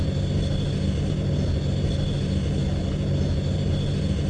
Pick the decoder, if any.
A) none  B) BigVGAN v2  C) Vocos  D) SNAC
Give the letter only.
A